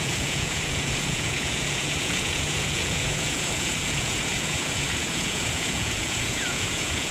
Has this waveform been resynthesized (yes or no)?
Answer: yes